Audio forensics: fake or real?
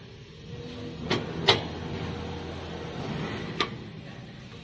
real